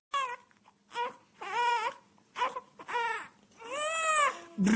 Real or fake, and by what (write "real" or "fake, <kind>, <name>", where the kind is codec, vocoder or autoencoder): real